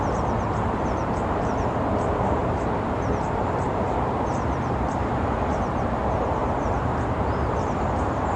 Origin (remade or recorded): remade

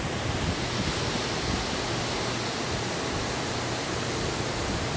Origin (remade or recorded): recorded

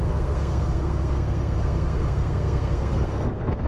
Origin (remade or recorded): remade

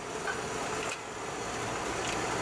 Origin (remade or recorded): recorded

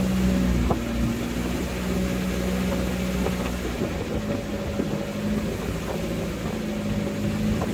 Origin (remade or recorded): recorded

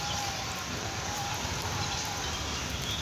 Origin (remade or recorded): recorded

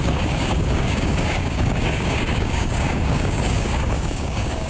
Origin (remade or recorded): remade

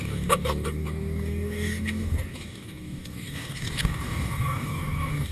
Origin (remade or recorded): remade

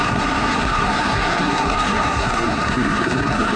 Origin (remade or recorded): remade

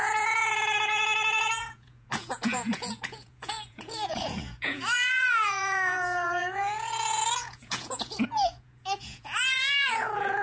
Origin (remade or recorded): remade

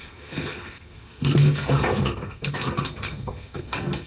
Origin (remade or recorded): remade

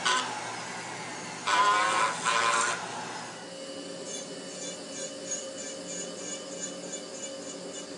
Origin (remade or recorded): recorded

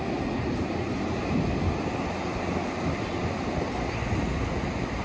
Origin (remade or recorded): recorded